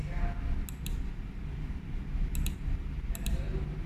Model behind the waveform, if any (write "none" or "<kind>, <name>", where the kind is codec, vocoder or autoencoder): none